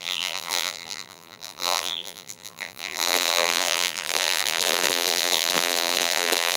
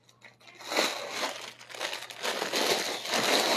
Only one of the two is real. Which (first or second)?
second